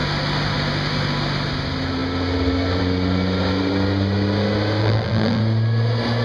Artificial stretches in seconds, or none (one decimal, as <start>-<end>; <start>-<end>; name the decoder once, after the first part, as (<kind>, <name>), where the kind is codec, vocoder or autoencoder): 4.8-5.4 (vocoder, BigVGAN v2)